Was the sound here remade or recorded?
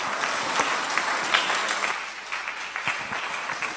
recorded